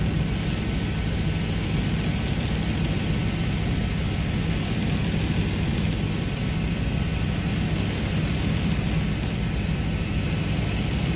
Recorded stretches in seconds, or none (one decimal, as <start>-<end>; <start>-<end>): 0.0-11.2